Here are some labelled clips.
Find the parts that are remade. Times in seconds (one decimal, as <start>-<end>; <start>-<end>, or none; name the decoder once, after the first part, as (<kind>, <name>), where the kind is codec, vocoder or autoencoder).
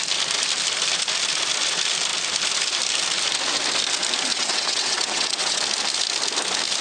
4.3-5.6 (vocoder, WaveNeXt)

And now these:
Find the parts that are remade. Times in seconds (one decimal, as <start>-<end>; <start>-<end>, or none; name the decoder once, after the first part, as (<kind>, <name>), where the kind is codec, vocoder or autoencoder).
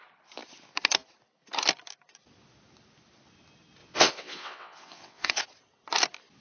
3.8-5.4 (vocoder, WaveNeXt)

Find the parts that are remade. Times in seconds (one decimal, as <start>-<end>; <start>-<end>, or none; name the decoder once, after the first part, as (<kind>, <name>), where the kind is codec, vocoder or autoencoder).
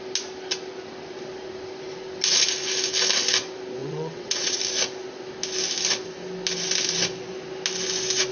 3.8-4.6 (vocoder, WaveNeXt)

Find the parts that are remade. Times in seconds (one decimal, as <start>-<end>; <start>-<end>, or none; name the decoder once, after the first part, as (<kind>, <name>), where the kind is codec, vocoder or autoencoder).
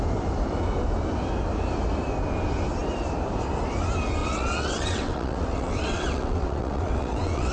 4.2-7.5 (vocoder, WaveNeXt)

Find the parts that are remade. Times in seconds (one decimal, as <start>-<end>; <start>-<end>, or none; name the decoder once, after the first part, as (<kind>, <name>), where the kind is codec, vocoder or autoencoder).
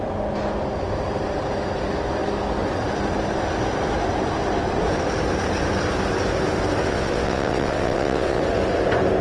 6.8-8.4 (vocoder, WaveNeXt)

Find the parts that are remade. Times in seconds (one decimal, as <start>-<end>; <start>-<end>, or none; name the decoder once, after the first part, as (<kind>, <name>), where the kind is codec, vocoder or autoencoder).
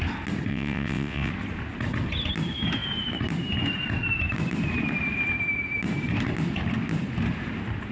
0.5-1.3 (vocoder, WaveNeXt)